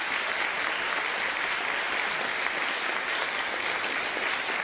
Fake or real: real